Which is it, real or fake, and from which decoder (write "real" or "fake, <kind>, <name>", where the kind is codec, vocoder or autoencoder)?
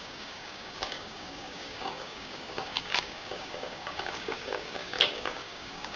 fake, codec, DAC